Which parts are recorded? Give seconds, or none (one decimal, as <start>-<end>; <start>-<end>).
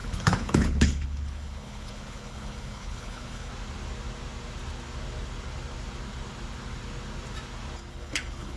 3.5-7.9